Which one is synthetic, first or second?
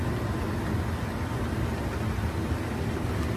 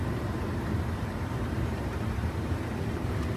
second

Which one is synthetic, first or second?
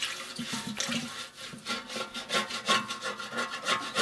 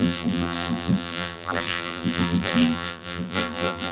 second